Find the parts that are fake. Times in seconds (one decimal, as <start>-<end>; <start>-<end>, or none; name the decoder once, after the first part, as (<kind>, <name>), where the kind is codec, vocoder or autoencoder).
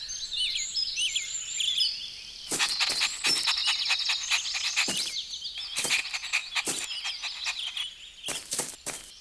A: none